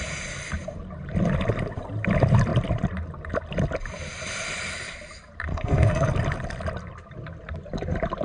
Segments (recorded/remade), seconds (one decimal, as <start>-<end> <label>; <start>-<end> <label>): 0.0-5.5 recorded; 5.5-6.1 remade; 6.1-8.2 recorded